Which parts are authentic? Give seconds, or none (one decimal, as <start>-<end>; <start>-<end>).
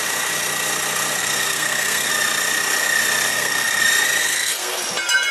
0.0-1.2; 2.1-3.3; 3.8-4.2; 4.8-5.3